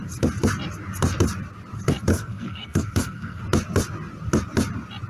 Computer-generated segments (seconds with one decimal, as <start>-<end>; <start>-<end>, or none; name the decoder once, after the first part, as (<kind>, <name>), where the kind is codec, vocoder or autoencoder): 2.1-3.4 (codec, SNAC)